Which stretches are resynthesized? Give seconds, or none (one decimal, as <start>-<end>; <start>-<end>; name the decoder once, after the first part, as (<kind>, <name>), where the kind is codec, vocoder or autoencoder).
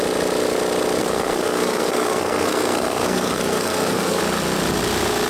1.0-4.2 (codec, SNAC)